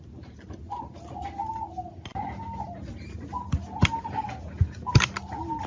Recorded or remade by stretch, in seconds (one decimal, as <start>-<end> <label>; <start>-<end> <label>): 0.0-5.7 recorded